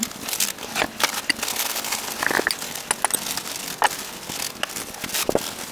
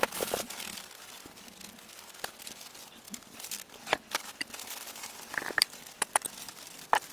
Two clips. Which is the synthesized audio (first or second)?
second